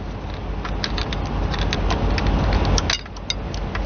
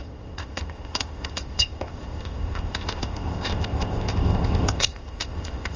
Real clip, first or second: first